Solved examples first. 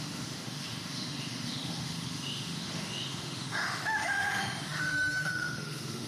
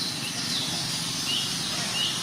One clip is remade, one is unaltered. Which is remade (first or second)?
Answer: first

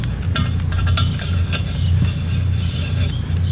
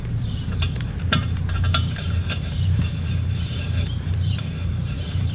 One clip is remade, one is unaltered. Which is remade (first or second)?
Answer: second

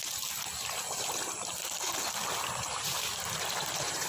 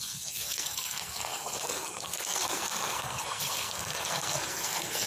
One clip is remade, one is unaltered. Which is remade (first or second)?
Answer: second